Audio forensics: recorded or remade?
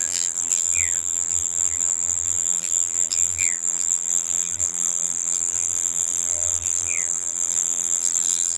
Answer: remade